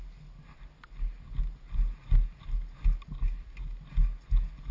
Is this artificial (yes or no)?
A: no